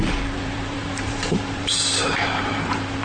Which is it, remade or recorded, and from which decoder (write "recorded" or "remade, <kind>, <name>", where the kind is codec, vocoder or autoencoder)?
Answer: remade, vocoder, BigVGAN v2